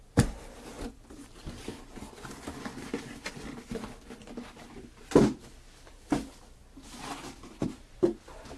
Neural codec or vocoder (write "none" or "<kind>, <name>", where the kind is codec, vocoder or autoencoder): none